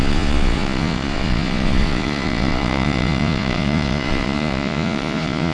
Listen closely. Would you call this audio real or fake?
fake